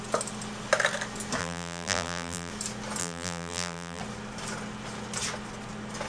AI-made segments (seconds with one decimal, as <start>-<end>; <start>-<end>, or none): 1.4-2.5; 3.0-4.0

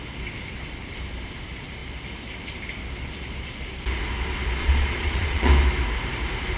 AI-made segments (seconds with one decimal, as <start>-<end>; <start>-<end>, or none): 4.6-5.5

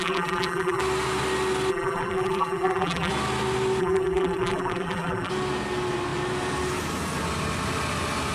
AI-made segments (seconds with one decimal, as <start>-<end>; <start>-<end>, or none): 0.0-0.8; 1.7-3.1; 3.8-5.3

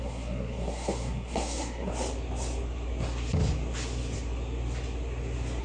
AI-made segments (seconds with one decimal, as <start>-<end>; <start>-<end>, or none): 0.0-1.9

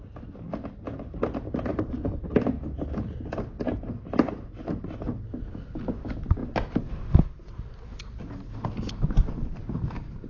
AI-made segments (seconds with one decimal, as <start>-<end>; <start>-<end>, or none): 1.7-2.2